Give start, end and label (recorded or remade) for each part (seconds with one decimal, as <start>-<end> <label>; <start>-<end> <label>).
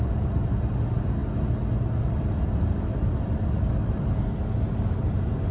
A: 0.0-5.5 recorded